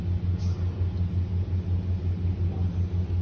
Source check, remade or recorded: recorded